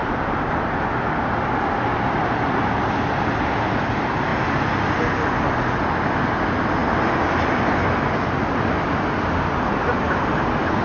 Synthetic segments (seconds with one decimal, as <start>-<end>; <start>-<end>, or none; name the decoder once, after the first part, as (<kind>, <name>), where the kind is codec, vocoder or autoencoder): none